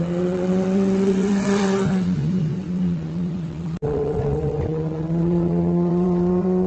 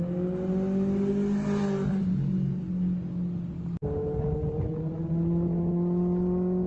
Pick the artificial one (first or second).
first